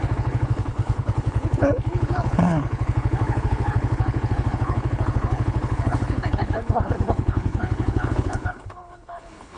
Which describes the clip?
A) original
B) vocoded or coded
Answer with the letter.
B